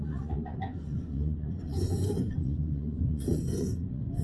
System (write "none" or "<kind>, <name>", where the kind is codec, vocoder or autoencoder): vocoder, Vocos